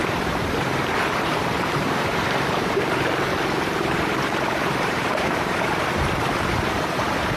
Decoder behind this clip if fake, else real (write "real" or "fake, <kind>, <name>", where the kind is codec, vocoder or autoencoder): fake, vocoder, BigVGAN v2